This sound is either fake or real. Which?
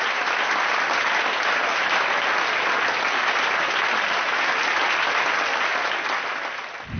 real